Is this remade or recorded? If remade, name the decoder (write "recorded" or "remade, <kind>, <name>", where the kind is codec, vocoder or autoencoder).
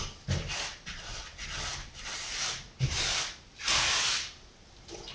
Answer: recorded